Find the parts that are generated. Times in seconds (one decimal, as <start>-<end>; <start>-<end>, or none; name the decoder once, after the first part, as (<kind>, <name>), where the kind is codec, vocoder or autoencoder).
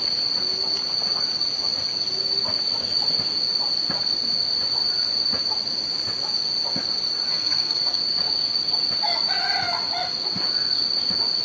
7.3-8.0 (codec, SNAC)